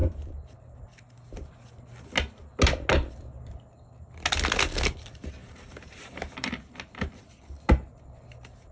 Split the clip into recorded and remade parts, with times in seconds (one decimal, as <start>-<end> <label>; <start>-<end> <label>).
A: 0.0-0.8 remade; 0.8-5.4 recorded; 5.4-6.6 remade; 6.6-8.7 recorded